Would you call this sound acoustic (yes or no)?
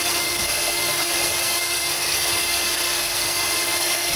no